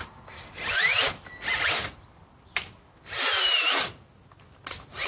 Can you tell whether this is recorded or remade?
recorded